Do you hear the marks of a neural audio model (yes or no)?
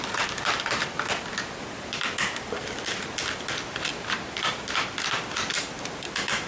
no